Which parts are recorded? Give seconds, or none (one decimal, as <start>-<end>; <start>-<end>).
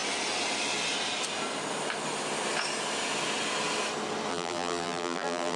0.0-4.3